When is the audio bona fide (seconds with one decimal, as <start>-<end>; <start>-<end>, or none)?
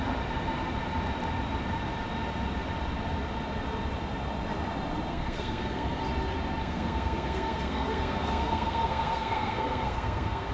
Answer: 0.0-5.1; 6.0-6.6